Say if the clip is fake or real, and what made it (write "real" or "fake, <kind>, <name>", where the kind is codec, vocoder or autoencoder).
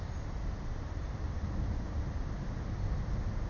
real